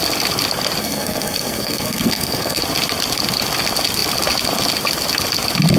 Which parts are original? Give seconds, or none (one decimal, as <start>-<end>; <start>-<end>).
0.0-0.8; 2.6-5.8